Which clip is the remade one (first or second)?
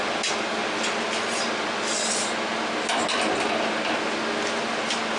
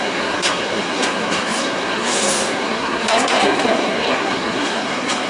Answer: second